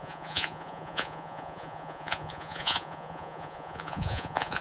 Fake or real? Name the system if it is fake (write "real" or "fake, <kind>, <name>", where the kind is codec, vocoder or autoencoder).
fake, vocoder, Vocos